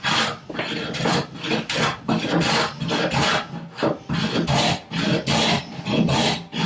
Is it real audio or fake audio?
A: real